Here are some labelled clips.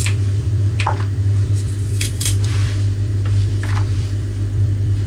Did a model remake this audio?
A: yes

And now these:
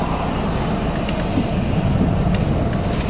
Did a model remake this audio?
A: no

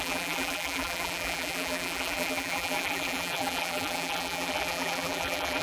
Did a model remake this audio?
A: yes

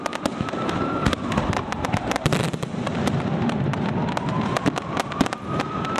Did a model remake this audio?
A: yes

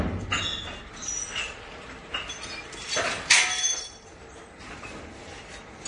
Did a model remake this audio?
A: no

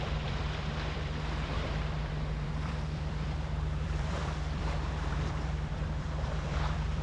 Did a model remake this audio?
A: yes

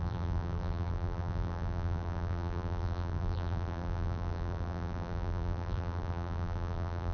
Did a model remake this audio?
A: yes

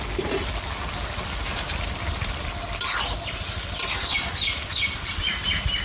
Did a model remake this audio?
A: no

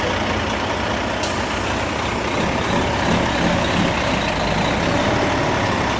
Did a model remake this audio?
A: no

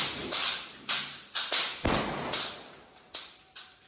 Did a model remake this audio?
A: no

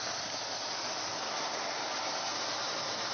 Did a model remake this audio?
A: no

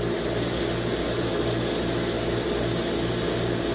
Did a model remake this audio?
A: no